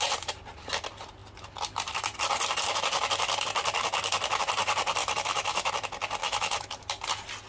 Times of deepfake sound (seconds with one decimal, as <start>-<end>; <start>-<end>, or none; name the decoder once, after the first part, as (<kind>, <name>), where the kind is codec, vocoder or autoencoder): 5.0-5.7 (autoencoder, DAC-VAE); 6.2-6.7